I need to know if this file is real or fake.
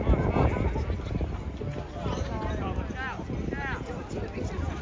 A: real